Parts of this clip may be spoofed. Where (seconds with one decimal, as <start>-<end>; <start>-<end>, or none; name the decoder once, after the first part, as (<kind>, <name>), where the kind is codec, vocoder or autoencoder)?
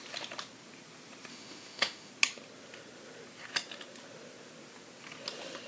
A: 1.3-2.1 (autoencoder, DAC-VAE)